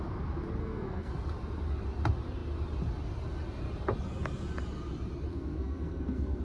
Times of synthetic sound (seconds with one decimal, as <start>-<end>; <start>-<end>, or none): 0.6-1.1; 5.3-6.4